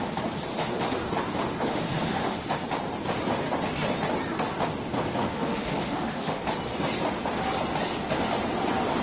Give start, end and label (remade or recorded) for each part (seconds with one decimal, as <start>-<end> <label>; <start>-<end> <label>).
0.0-0.5 recorded; 0.5-1.1 remade; 1.1-1.7 recorded; 1.7-2.5 remade; 2.5-5.2 recorded; 5.2-6.4 remade; 6.4-9.0 recorded